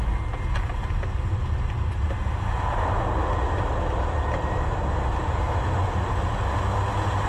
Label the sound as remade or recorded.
recorded